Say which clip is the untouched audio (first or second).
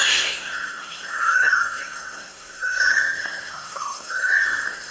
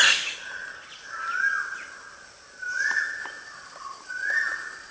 second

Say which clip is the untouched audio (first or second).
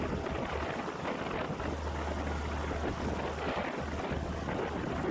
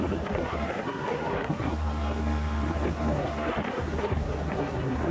first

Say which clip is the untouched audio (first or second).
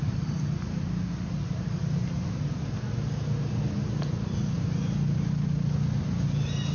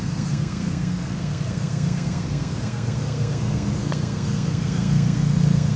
first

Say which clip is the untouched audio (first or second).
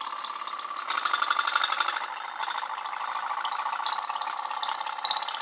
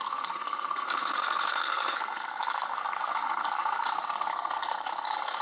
first